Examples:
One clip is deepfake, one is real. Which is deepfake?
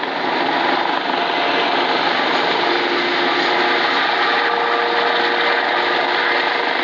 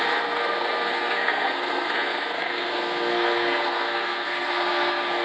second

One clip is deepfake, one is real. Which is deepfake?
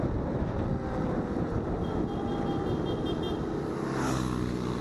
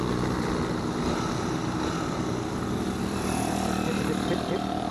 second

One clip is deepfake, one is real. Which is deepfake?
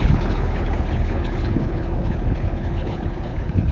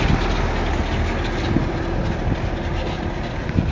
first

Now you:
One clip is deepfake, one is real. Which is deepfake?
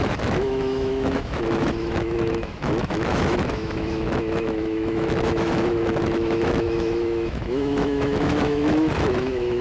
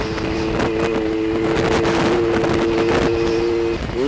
first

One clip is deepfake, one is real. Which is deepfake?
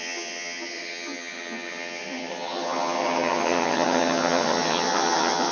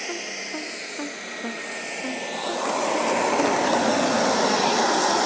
first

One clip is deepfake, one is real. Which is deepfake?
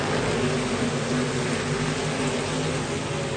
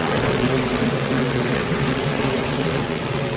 second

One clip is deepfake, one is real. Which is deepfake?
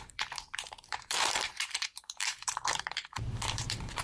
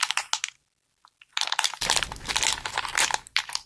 first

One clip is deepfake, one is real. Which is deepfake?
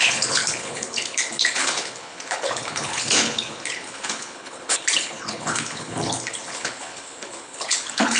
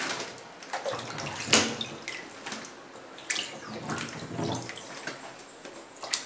first